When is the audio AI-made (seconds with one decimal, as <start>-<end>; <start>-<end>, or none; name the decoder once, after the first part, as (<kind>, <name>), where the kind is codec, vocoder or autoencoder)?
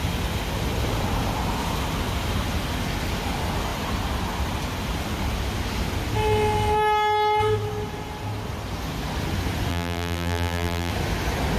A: 9.7-10.9 (vocoder, BigVGAN v2)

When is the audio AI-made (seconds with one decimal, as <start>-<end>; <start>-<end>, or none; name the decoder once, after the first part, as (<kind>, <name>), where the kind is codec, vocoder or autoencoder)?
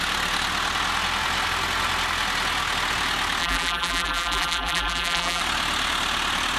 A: 3.4-5.4 (vocoder, BigVGAN v2)